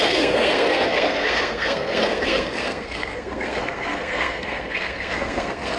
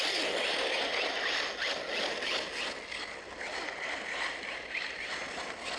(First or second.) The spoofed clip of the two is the first